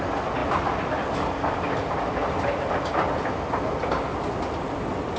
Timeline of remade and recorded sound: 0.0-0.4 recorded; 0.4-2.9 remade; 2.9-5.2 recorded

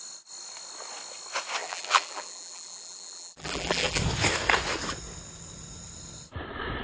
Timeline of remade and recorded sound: 0.0-1.6 recorded; 1.6-4.0 remade; 4.0-6.8 recorded

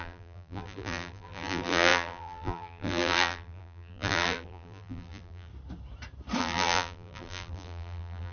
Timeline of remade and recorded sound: 0.0-5.5 remade; 5.5-6.4 recorded; 6.4-8.3 remade

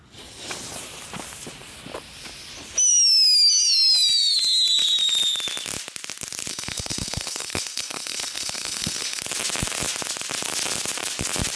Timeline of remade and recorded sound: 0.0-6.5 recorded; 6.5-9.2 remade; 9.2-11.6 recorded

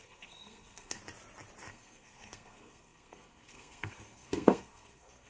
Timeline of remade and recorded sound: 0.0-1.0 remade; 1.0-1.7 recorded; 1.7-5.3 remade

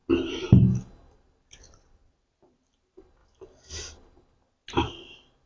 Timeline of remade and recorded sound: 0.0-5.5 recorded

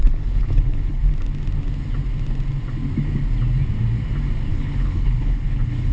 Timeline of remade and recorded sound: 0.0-1.0 remade; 1.0-4.5 recorded; 4.5-5.9 remade